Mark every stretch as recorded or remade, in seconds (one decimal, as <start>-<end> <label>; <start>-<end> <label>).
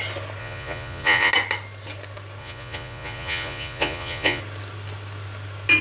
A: 0.0-0.4 recorded; 0.4-1.3 remade; 1.3-2.4 recorded; 2.4-4.4 remade; 4.4-5.8 recorded